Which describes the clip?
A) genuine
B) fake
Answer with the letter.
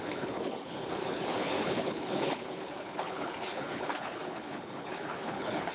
B